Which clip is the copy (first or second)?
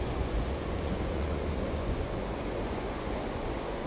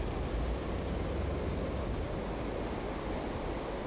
first